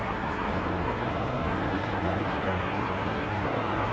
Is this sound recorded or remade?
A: remade